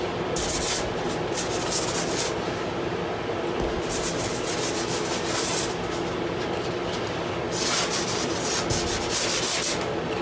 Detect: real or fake real